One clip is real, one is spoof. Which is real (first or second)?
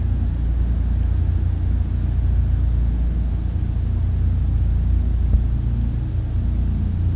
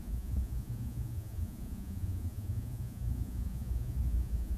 first